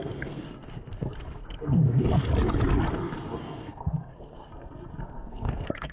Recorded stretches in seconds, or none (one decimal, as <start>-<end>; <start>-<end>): 2.3-2.9; 4.5-5.0